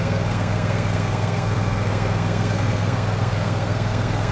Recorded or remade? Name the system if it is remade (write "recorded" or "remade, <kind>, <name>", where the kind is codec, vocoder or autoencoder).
remade, codec, SNAC